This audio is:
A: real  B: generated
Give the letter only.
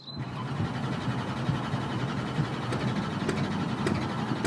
A